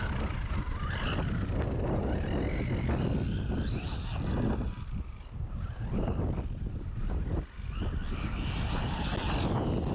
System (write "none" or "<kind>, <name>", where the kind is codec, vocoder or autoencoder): none